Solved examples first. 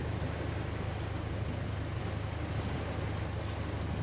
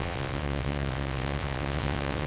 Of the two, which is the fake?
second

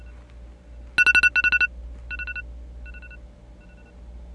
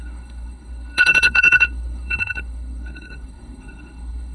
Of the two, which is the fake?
second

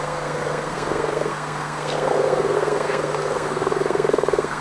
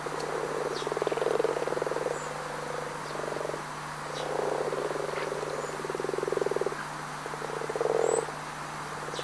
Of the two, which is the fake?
first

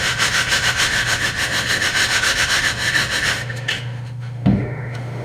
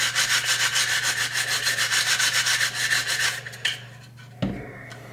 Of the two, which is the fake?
first